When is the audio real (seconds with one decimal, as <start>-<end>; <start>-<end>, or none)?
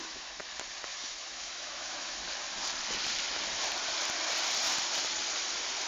0.4-0.9; 2.2-5.9